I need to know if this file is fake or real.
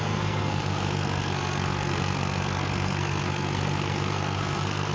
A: fake